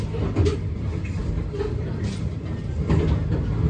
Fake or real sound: real